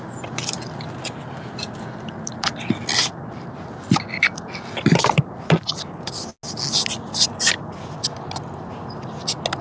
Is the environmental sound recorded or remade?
recorded